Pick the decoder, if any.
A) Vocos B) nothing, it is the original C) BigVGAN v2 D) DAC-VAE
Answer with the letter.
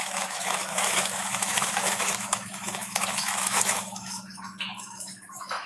D